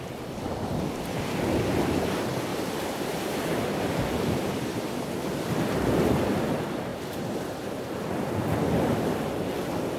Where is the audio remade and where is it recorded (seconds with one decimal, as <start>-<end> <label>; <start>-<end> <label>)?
0.0-2.5 recorded; 2.5-4.8 remade; 4.8-6.9 recorded; 6.9-8.3 remade; 8.3-10.0 recorded